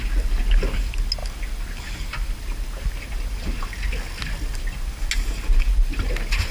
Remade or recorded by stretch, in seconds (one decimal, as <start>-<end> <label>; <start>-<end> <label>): 0.0-6.5 recorded